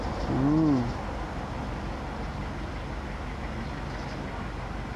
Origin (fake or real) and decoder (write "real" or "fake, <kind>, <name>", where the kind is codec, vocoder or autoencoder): real